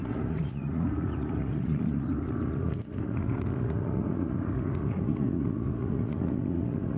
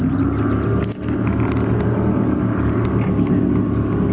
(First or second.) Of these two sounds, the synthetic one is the first